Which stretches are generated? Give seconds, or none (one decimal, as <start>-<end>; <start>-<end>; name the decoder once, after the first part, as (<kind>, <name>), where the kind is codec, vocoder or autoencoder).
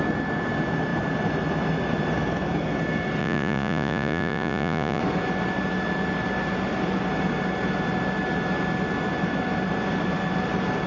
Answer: 3.2-5.0 (vocoder, Vocos)